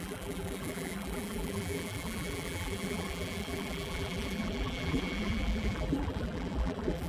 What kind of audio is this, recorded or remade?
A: remade